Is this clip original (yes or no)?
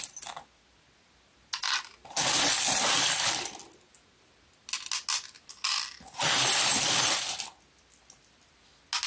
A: yes